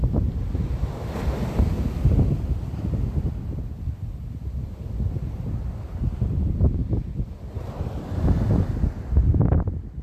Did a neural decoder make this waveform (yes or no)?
no